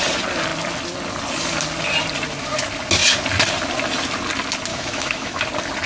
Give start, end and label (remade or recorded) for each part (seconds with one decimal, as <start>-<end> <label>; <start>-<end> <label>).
0.0-4.7 recorded; 4.7-5.4 remade; 5.4-5.9 recorded